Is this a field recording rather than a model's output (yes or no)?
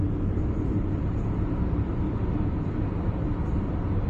yes